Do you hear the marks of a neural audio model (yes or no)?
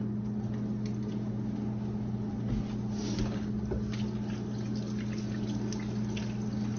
no